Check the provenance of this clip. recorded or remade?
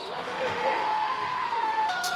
remade